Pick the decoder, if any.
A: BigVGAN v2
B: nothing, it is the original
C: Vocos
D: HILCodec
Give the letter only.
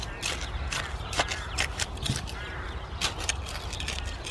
B